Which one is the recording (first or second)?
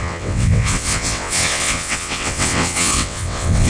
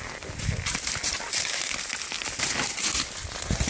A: second